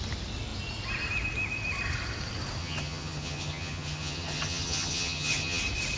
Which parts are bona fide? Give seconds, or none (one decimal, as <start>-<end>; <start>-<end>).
0.0-2.6; 5.6-6.0